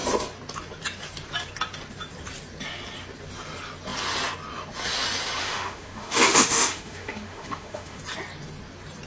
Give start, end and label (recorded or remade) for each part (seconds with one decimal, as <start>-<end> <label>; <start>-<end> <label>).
0.0-5.4 recorded; 5.4-8.0 remade; 8.0-9.1 recorded